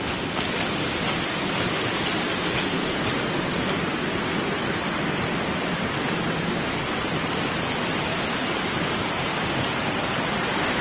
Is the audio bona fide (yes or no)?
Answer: yes